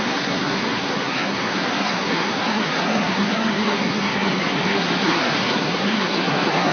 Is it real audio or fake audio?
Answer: fake